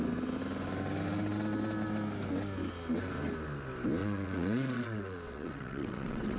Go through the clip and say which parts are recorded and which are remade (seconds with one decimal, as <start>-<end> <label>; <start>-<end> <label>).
0.0-4.0 recorded; 4.0-6.4 remade